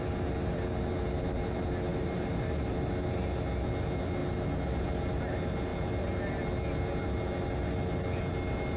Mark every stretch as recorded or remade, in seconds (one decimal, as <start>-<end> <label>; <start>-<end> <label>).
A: 0.0-1.9 recorded; 1.9-2.9 remade; 2.9-8.8 recorded